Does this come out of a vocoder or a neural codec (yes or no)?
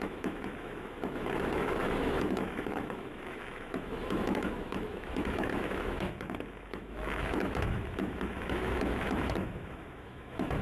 yes